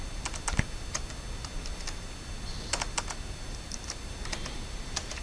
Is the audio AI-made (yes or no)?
no